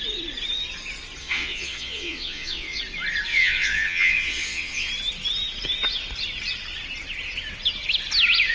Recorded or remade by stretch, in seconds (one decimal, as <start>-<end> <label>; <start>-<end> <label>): 0.0-1.2 recorded; 1.2-2.8 remade; 2.8-3.3 recorded; 3.3-4.9 remade; 4.9-8.5 recorded